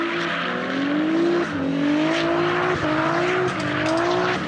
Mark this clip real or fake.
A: real